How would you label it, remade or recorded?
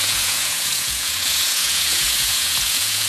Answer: remade